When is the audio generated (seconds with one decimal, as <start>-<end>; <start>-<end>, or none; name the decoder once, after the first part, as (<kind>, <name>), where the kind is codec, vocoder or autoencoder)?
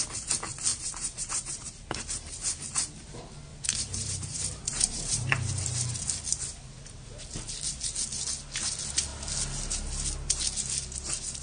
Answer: 0.7-2.6 (vocoder, BigVGAN v2); 3.5-5.5